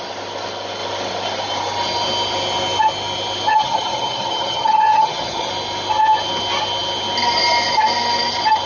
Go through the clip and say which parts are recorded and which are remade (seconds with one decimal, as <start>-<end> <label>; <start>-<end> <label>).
0.0-3.5 recorded; 3.5-5.5 remade; 5.5-8.7 recorded